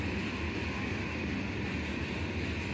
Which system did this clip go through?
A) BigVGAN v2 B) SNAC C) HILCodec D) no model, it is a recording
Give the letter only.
D